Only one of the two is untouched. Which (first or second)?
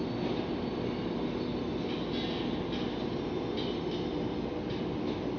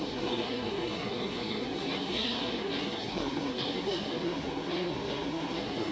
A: first